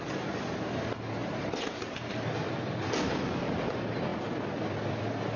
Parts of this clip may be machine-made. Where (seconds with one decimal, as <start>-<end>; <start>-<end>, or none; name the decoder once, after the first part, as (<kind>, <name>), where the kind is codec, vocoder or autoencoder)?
1.2-2.5 (vocoder, BigVGAN v2)